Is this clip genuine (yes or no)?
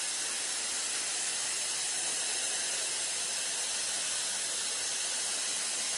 yes